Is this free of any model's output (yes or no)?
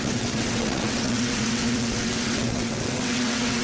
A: no